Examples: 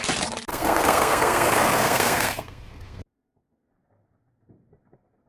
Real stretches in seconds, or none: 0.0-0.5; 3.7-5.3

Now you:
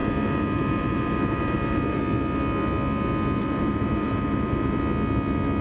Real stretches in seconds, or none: 2.0-3.4; 4.8-5.6

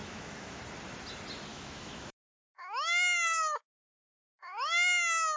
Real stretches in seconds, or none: 0.6-1.5; 4.1-5.4

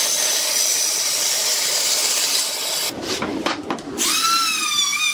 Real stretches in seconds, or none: 0.0-5.1

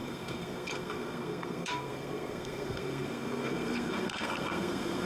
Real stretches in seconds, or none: none

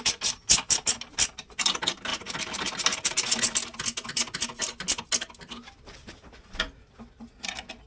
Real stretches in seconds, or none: 0.0-7.9

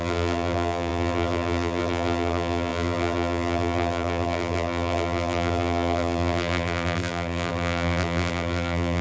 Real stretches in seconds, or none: none